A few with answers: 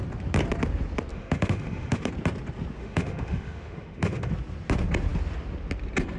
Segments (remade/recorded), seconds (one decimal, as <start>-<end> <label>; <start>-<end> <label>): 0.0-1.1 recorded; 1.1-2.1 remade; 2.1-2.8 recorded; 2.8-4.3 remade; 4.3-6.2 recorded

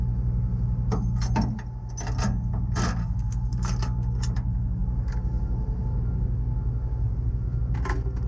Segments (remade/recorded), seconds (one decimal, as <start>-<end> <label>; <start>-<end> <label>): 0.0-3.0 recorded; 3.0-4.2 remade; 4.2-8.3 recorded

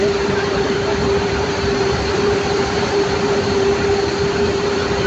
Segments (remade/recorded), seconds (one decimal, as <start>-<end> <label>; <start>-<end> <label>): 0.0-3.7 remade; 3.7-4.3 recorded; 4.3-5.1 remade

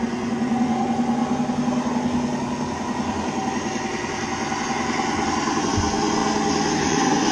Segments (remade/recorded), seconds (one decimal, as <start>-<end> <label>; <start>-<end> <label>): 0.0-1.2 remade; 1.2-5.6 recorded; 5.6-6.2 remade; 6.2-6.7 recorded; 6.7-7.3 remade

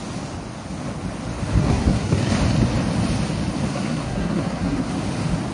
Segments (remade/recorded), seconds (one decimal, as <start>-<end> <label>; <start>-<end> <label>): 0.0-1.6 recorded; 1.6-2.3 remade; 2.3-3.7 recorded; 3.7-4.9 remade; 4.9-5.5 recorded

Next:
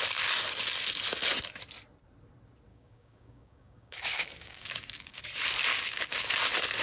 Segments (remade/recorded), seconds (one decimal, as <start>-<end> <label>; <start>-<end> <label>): 0.0-2.7 recorded; 2.7-5.2 remade; 5.2-5.7 recorded; 5.7-6.3 remade; 6.3-6.8 recorded

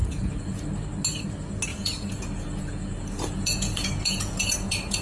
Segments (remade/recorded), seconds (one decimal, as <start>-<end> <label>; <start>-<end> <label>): 0.0-0.6 remade; 0.6-1.7 recorded; 1.7-5.0 remade